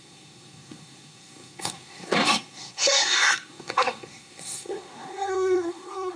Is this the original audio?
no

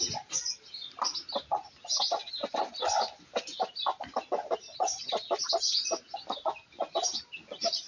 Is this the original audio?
yes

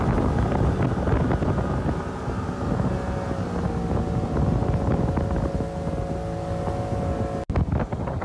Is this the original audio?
yes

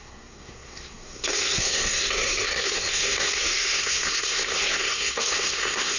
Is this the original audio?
no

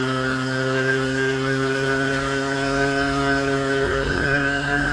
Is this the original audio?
no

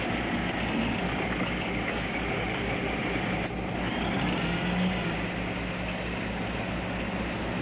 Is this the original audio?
yes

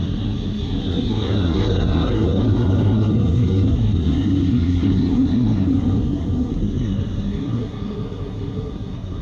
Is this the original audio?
no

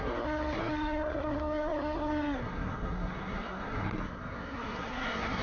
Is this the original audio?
no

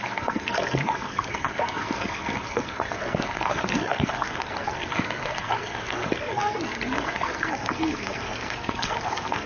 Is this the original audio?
no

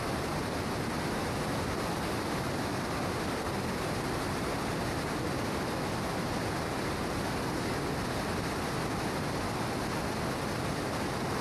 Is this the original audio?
yes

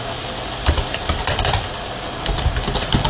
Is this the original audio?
yes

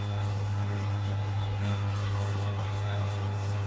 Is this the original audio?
no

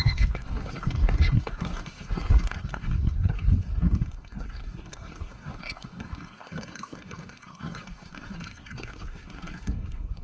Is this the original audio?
no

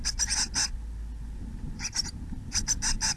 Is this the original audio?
yes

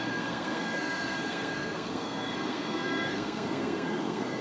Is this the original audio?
no